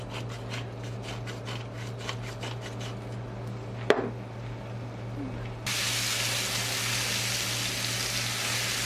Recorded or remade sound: recorded